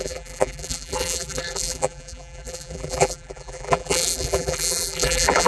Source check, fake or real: fake